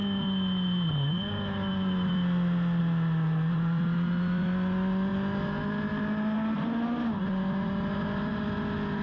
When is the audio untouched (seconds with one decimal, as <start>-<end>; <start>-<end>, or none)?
0.0-9.0